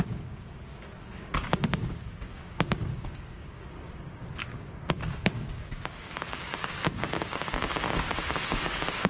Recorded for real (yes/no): no